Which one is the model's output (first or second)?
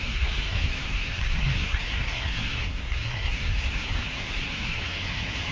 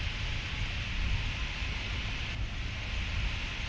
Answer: first